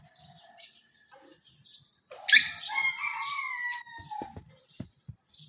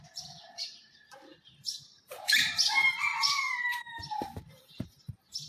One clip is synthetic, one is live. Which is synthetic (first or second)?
second